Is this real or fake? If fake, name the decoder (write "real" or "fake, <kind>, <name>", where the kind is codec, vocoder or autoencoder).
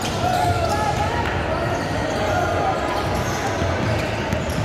real